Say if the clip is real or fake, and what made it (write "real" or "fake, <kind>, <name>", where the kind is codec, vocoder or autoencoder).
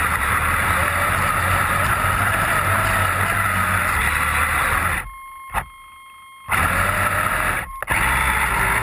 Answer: real